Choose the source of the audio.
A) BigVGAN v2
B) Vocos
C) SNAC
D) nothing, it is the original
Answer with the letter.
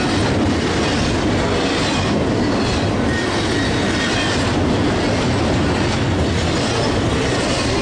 D